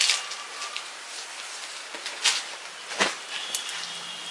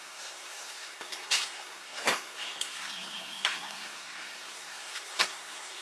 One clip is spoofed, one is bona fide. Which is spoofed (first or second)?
second